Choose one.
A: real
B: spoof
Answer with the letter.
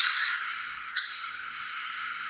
B